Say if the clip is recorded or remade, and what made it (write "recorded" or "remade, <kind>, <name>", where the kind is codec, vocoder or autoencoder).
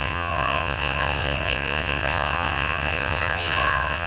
remade, vocoder, WaveNeXt